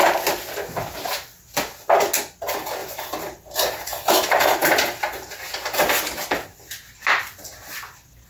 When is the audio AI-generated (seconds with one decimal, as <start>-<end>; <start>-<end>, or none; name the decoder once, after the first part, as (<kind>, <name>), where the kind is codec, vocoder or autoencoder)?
none